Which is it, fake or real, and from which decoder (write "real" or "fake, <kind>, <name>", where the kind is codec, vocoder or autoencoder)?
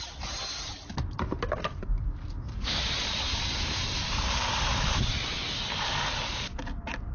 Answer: fake, vocoder, BigVGAN v2